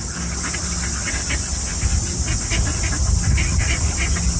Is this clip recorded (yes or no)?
yes